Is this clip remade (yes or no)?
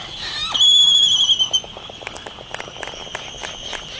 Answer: no